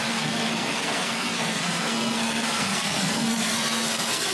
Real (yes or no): no